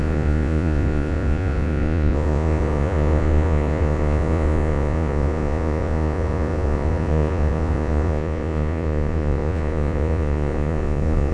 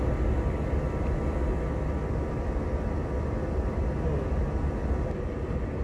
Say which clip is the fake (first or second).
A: first